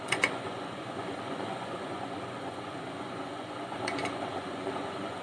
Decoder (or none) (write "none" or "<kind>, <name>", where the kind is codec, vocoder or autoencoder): vocoder, Vocos